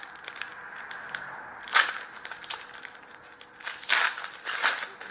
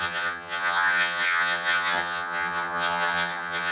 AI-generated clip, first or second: second